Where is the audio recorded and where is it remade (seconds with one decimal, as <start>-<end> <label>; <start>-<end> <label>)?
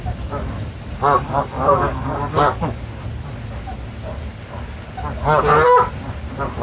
0.0-1.0 recorded; 1.0-2.8 remade; 2.8-6.6 recorded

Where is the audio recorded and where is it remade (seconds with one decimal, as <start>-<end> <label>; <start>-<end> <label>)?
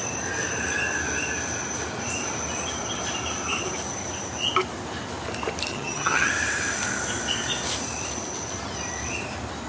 0.0-5.7 recorded; 5.7-6.3 remade; 6.3-9.7 recorded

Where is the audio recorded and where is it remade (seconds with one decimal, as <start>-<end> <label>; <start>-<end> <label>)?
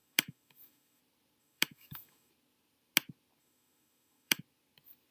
0.0-1.0 remade; 1.0-1.4 recorded; 1.4-2.3 remade; 2.3-3.4 recorded; 3.4-4.4 remade; 4.4-5.1 recorded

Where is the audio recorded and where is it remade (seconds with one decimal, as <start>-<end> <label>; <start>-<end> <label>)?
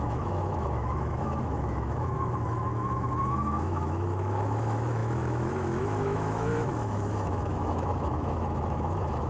0.0-9.3 remade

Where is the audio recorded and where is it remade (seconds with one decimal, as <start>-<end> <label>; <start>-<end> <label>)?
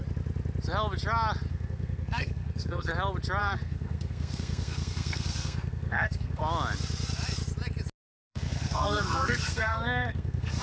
0.0-1.5 recorded; 1.5-2.9 remade; 2.9-3.4 recorded; 3.4-6.4 remade; 6.4-8.2 recorded; 8.2-10.6 remade